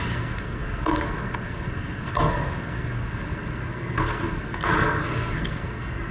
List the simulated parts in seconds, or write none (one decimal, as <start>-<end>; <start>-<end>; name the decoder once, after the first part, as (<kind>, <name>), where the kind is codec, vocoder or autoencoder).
0.0-6.1 (codec, SNAC)